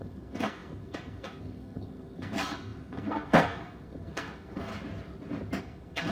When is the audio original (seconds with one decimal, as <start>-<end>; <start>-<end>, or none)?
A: 4.7-5.6